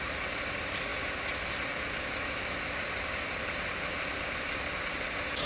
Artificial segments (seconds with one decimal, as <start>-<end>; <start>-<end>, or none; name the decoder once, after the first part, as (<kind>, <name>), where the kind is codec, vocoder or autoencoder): none